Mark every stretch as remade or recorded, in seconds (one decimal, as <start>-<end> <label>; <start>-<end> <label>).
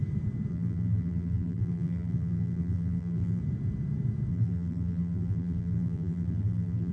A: 0.0-0.5 recorded; 0.5-3.4 remade; 3.4-4.3 recorded; 4.3-6.9 remade